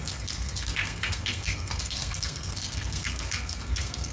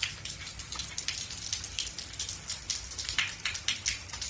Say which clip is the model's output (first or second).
first